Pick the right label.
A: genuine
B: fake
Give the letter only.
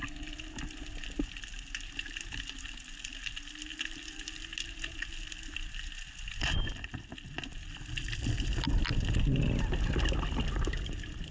A